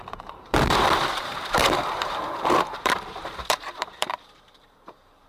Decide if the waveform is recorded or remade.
remade